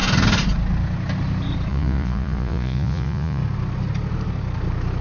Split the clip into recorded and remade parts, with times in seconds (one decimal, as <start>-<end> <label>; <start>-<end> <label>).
0.0-1.7 recorded; 1.7-3.4 remade; 3.4-5.0 recorded